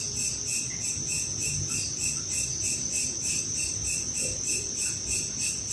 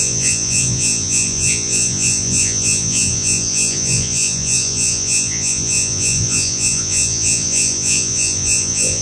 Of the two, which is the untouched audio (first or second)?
first